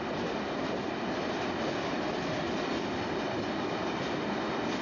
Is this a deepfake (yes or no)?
no